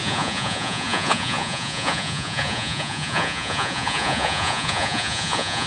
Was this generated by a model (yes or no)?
yes